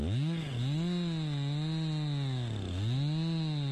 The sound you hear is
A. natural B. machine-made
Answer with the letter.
A